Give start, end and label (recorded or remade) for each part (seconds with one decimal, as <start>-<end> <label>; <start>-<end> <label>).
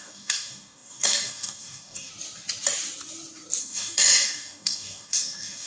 0.0-2.1 remade; 2.1-3.6 recorded; 3.6-5.7 remade